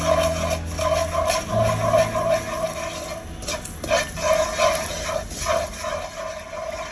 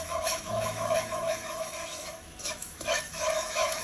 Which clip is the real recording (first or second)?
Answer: first